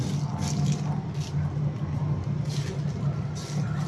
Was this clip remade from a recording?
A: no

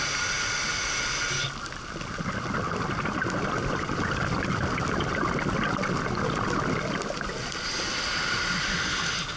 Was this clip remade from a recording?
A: no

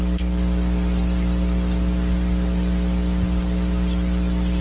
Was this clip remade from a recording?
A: no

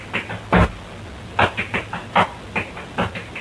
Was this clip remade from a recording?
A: no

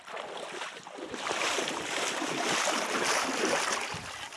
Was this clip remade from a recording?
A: no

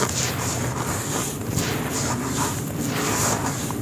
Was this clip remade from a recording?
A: no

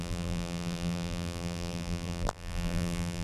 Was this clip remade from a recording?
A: yes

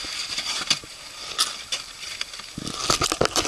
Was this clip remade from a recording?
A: no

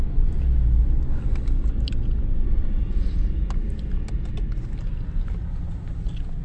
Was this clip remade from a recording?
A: no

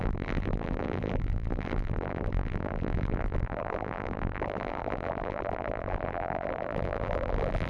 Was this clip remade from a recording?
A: yes